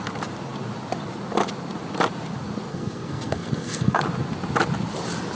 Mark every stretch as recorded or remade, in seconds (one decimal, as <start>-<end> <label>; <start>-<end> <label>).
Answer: 0.0-2.7 recorded; 2.7-4.0 remade; 4.0-5.3 recorded